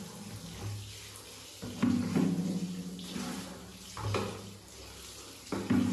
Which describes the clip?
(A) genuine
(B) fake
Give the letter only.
A